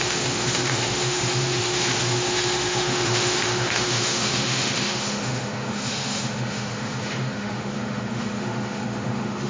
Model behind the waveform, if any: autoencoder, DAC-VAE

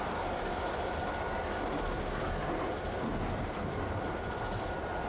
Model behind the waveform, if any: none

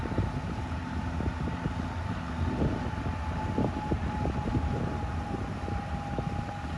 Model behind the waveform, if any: none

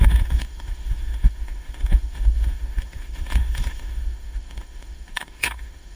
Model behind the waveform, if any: autoencoder, DAC-VAE